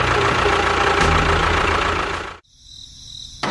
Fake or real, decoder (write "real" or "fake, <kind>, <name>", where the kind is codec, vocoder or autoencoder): real